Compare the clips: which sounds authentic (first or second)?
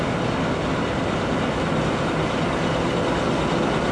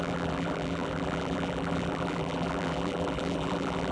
first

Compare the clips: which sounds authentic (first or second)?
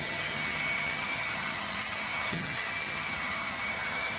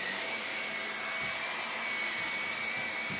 second